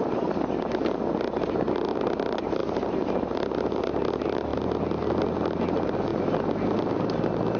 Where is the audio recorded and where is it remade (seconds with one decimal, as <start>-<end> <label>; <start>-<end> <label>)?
0.0-7.6 recorded